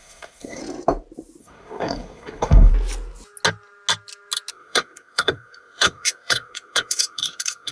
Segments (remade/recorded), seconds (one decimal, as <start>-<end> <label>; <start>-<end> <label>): 0.0-0.6 remade; 0.6-1.4 recorded; 1.4-2.7 remade; 2.7-4.5 recorded; 4.5-7.7 remade